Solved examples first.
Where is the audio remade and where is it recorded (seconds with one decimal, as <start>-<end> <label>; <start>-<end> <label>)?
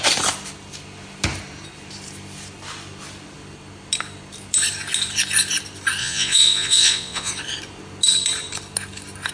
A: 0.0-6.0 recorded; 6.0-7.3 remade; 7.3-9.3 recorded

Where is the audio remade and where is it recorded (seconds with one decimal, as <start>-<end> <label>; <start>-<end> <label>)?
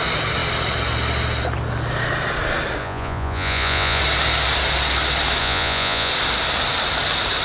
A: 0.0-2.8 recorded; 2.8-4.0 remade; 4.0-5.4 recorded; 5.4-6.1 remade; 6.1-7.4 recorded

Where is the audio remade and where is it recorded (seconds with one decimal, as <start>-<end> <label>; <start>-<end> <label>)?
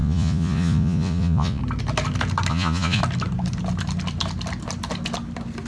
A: 0.0-1.6 remade; 1.6-2.5 recorded; 2.5-3.0 remade; 3.0-5.7 recorded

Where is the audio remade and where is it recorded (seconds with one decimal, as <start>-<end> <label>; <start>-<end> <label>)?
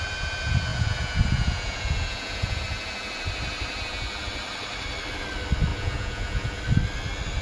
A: 0.0-0.7 recorded; 0.7-2.6 remade; 2.6-5.7 recorded; 5.7-6.6 remade; 6.6-7.4 recorded